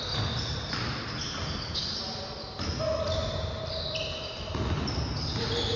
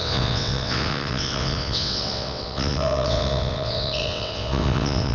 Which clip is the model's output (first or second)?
second